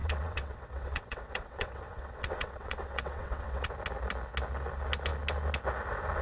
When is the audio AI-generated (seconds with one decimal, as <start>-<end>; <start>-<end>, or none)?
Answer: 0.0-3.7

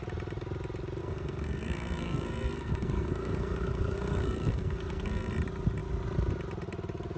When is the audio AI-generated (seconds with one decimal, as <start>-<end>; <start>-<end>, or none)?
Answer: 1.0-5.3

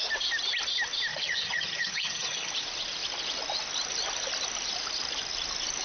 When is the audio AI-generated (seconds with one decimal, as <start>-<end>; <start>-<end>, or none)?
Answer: 1.1-2.5

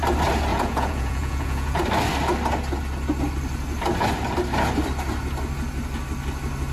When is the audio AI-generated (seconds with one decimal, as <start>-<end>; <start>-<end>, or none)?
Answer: 0.5-1.8

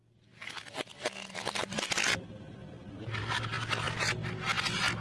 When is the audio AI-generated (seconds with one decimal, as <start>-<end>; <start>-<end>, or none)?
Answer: none

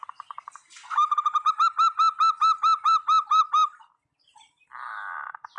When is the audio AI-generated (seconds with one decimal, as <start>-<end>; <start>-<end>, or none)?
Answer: none

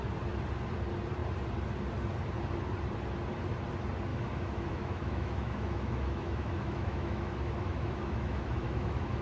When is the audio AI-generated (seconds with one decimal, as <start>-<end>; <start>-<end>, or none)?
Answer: 4.1-9.2